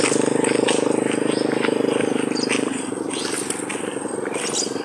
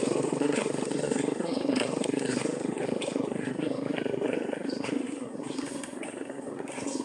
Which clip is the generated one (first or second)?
second